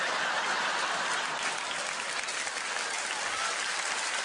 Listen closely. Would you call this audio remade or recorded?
recorded